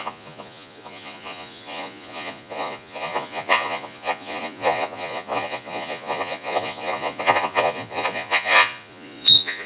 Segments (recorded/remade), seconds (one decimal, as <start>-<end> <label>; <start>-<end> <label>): 0.0-9.7 remade